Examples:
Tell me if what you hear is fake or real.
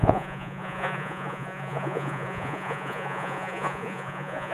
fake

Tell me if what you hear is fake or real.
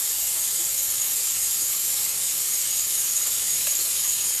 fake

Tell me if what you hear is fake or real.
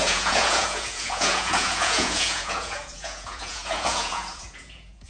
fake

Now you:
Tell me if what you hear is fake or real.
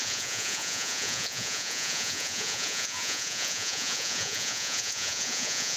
fake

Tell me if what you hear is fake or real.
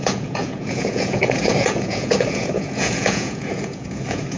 fake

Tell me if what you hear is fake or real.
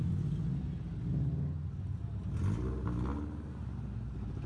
real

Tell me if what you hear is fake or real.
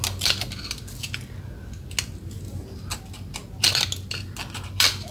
real